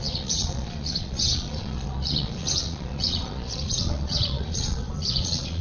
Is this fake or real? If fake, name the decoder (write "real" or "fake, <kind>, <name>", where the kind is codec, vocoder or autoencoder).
fake, vocoder, Vocos